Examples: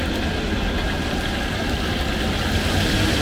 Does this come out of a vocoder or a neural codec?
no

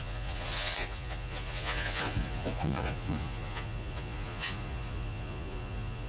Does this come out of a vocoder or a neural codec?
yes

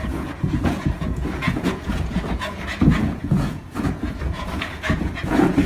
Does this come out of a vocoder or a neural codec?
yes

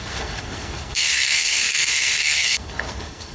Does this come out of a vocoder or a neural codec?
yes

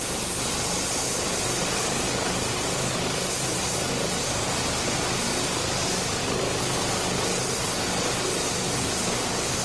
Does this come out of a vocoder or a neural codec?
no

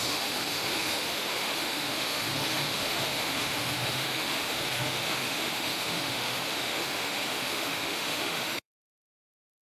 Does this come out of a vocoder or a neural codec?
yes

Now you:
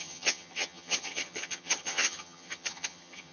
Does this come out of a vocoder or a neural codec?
yes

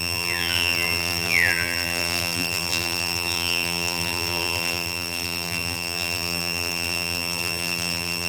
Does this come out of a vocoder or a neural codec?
yes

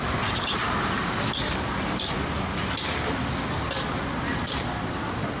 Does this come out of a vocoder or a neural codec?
no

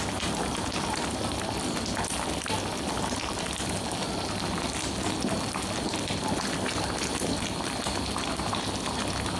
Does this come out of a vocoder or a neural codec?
no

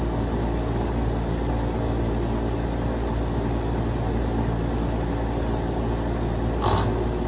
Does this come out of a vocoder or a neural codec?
no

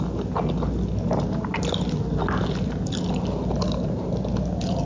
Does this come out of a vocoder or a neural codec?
no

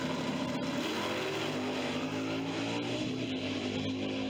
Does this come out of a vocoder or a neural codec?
no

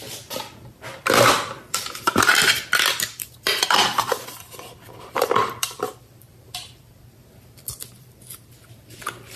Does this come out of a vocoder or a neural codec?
yes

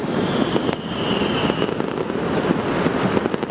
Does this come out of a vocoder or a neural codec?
no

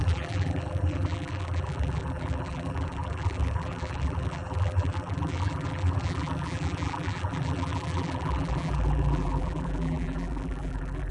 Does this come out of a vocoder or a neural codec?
yes